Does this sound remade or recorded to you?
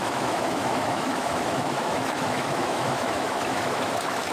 remade